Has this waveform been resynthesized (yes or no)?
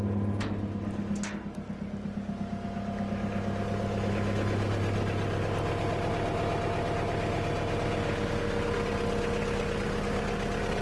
no